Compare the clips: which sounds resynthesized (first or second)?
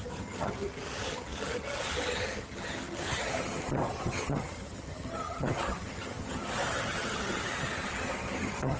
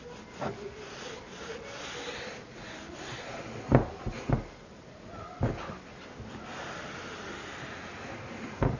first